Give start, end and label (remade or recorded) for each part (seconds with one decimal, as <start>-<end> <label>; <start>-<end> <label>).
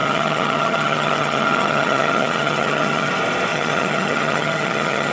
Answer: 0.0-3.1 remade; 3.1-3.5 recorded; 3.5-5.1 remade